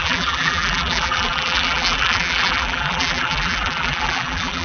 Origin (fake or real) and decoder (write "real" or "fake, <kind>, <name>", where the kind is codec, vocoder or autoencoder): fake, vocoder, BigVGAN v2